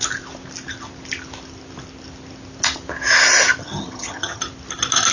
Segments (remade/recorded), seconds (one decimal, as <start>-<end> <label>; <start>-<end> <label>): 0.0-3.6 recorded; 3.6-4.4 remade; 4.4-5.1 recorded